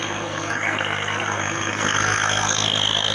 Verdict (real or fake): fake